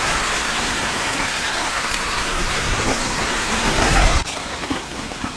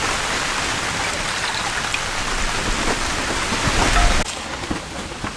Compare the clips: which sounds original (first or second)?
second